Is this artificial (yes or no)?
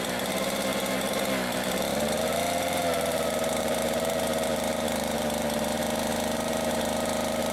yes